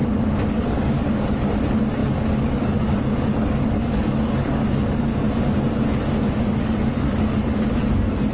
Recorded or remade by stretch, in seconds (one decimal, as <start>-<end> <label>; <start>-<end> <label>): 0.0-0.5 recorded; 0.5-5.1 remade; 5.1-6.2 recorded; 6.2-8.3 remade